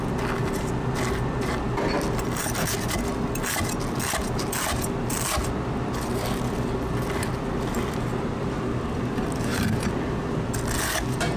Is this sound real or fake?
real